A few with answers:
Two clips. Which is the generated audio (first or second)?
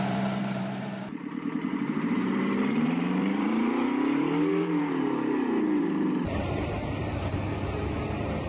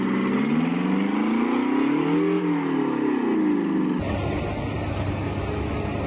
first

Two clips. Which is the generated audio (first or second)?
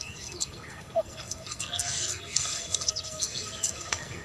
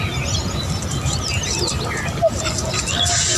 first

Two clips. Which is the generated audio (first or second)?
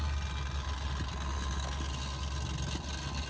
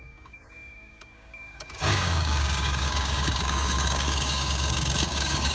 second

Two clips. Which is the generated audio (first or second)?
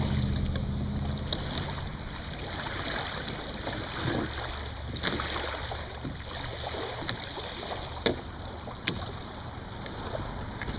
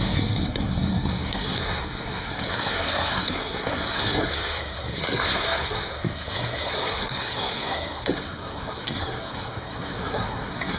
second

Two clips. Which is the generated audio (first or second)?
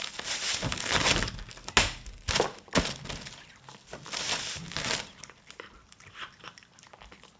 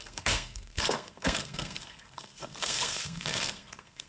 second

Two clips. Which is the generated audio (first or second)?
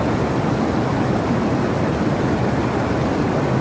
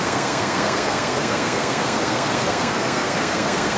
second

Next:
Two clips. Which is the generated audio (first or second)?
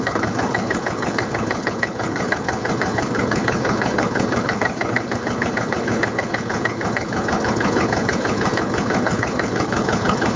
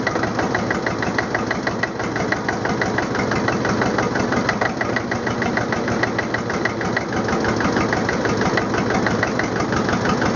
first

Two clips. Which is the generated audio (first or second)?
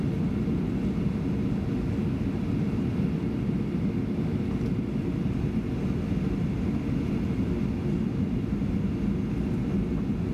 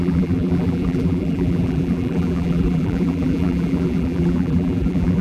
second